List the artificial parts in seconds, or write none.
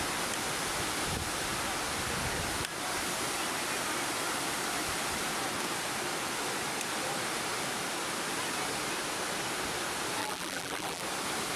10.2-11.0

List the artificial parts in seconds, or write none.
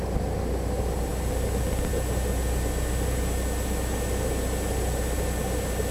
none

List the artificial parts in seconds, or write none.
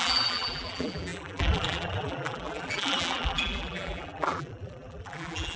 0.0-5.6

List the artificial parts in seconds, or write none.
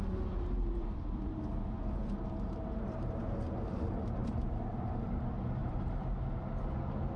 0.0-3.3; 4.2-5.1; 5.6-6.7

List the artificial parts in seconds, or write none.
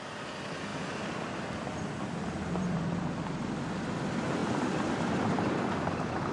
0.7-3.0